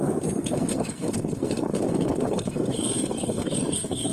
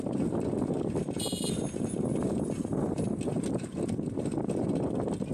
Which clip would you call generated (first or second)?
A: first